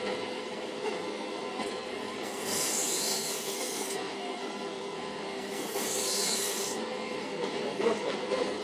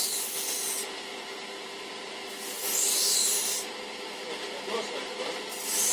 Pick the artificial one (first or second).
first